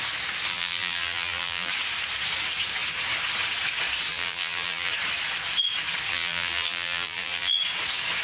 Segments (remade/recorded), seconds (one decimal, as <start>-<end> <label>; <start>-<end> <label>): 0.0-0.5 recorded; 0.5-1.7 remade; 1.7-4.1 recorded; 4.1-4.9 remade; 4.9-6.1 recorded; 6.1-7.6 remade; 7.6-8.2 recorded

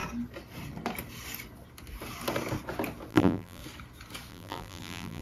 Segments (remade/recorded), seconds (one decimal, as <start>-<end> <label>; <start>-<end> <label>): 0.0-3.1 recorded; 3.1-3.6 remade; 3.6-4.3 recorded; 4.3-5.2 remade

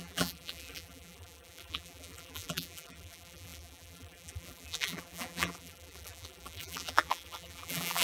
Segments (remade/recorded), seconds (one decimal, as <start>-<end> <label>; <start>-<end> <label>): 0.0-8.0 remade

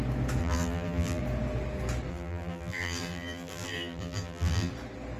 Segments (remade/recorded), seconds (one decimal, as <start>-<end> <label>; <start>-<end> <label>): 0.0-0.4 recorded; 0.4-1.2 remade; 1.2-2.1 recorded; 2.1-4.7 remade; 4.7-5.2 recorded

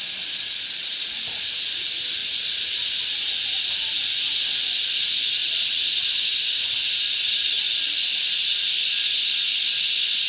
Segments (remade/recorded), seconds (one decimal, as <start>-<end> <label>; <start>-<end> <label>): 0.0-5.4 recorded; 5.4-6.0 remade; 6.0-10.3 recorded

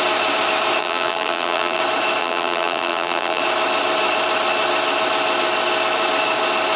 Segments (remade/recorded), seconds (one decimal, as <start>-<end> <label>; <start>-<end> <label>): 0.0-0.8 recorded; 0.8-1.8 remade; 1.8-2.2 recorded; 2.2-3.4 remade; 3.4-6.8 recorded

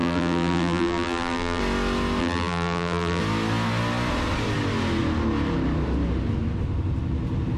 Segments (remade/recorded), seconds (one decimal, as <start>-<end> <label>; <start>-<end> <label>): 0.0-1.6 remade; 1.6-2.2 recorded; 2.2-3.2 remade; 3.2-7.6 recorded

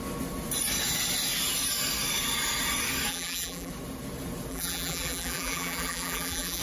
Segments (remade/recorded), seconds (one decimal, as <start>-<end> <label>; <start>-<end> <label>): 0.0-3.1 recorded; 3.1-3.7 remade; 3.7-4.5 recorded; 4.5-6.6 remade